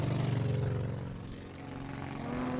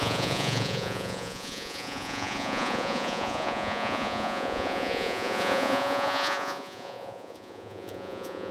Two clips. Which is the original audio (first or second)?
first